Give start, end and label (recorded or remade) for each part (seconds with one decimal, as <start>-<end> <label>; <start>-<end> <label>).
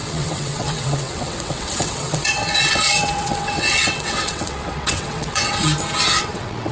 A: 0.0-5.7 remade; 5.7-6.2 recorded; 6.2-6.7 remade